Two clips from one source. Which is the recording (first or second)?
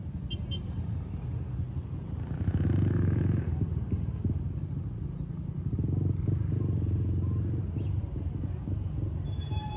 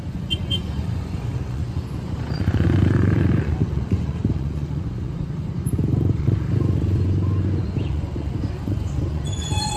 first